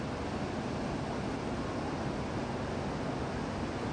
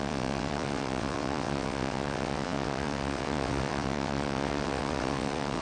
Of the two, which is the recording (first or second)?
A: first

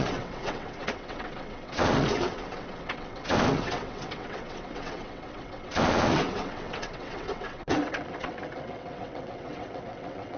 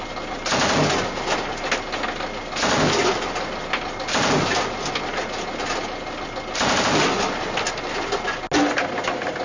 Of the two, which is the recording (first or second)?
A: second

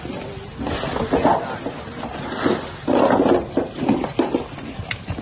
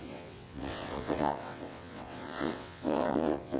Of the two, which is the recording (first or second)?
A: first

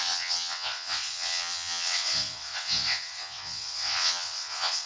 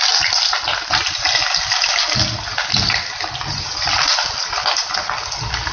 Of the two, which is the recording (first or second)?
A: second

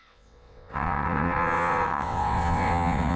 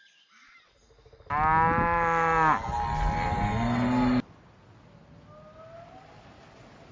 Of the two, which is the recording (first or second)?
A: second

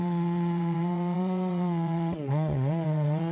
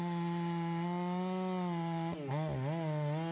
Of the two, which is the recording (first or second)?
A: second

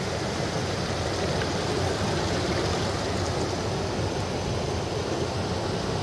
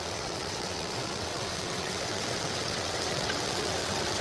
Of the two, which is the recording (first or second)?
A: first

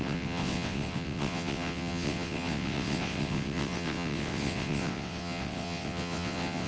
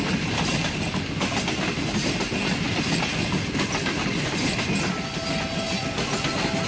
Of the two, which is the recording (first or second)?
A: second